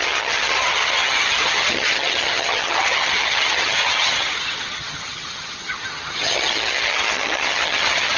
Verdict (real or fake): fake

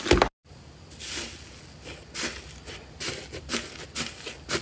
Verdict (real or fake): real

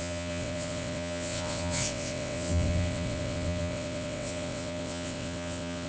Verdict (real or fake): fake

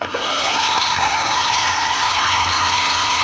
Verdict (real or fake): fake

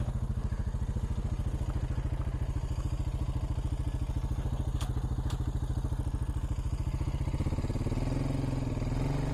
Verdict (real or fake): real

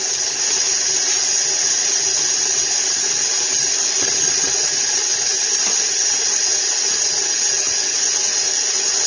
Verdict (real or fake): real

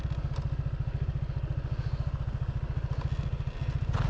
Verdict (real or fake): real